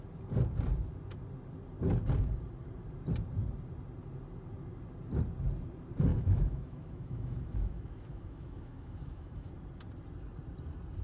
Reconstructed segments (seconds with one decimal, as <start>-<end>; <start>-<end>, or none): 6.1-9.5